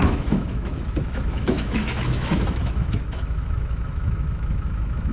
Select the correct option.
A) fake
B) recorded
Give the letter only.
A